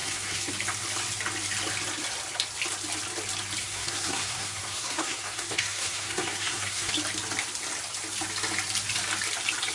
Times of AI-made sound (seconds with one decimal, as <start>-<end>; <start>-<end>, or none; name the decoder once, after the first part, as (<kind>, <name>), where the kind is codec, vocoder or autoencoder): 0.0-0.5 (codec, SNAC); 3.6-6.9